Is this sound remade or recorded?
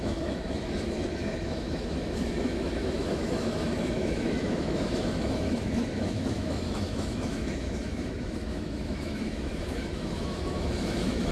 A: remade